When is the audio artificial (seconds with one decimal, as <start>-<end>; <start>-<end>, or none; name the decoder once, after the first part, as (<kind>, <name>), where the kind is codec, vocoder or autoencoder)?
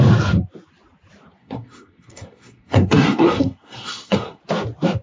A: 1.4-4.4 (codec, SNAC)